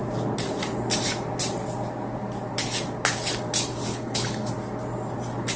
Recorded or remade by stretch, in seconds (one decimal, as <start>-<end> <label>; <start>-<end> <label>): 0.0-3.9 recorded; 3.9-4.5 remade; 4.5-5.6 recorded

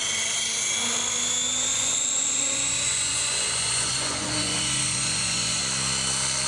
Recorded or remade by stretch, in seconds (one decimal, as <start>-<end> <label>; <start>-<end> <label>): 0.0-1.7 recorded; 1.7-5.6 remade; 5.6-6.5 recorded

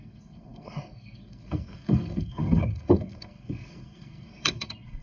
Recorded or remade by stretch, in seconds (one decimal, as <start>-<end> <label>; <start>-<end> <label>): 0.0-5.0 remade

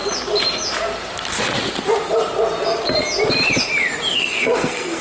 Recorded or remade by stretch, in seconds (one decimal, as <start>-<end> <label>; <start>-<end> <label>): 0.0-4.1 recorded; 4.1-5.0 remade